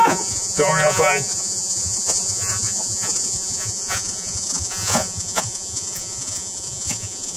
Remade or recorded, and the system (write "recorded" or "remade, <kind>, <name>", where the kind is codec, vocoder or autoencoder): remade, vocoder, Vocos